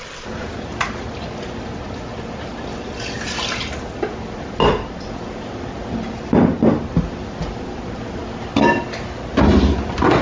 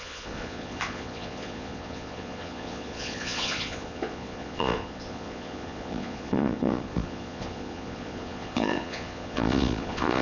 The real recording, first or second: first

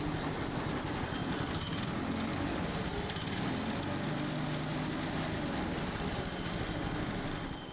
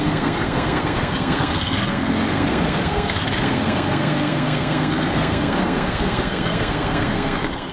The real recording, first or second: first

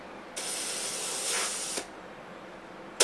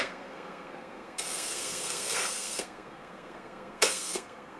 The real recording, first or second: first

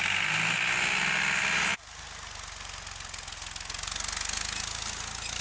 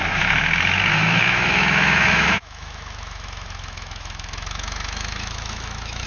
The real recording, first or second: first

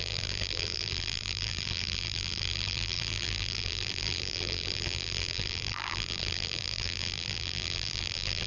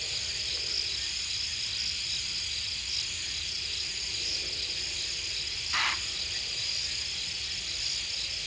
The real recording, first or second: second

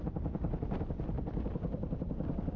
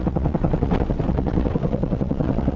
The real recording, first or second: first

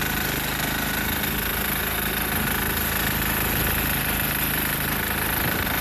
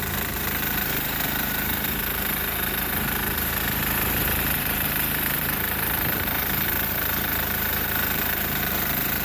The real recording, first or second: first